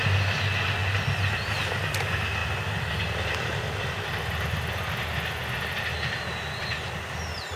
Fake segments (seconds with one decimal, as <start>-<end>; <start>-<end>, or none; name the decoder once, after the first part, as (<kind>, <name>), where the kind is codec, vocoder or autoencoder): none

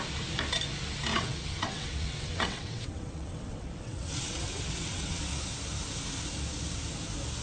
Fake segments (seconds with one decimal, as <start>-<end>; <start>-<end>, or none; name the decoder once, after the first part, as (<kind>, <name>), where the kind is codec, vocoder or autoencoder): 1.1-5.2 (vocoder, WaveNeXt)

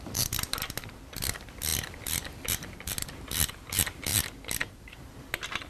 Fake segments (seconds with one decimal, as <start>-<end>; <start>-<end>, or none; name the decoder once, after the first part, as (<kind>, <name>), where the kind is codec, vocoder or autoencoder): 0.0-4.1 (vocoder, BigVGAN v2); 4.7-5.7